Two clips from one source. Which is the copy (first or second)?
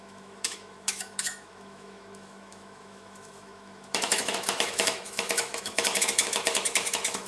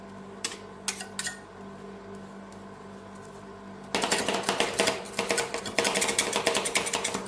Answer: first